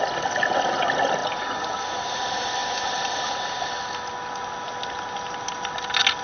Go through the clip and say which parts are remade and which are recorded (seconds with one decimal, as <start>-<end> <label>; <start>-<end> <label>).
0.0-6.2 recorded